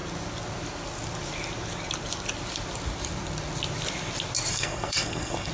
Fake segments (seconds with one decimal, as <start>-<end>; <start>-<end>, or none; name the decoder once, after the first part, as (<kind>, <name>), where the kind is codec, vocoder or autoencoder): 4.5-5.5 (codec, SNAC)